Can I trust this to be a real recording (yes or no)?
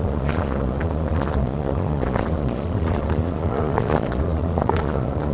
no